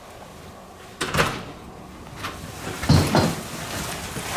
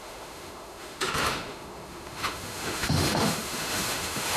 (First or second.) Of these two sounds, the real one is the first